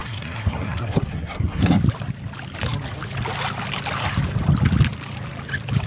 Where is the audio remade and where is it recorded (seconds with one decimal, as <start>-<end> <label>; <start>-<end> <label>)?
0.0-1.8 remade; 1.8-5.9 recorded